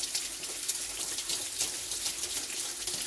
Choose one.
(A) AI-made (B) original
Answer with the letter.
B